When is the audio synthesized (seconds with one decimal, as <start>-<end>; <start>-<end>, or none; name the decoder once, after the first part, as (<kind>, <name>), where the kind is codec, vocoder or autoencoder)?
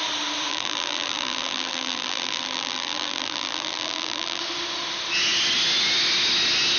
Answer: 0.5-4.4 (vocoder, BigVGAN v2)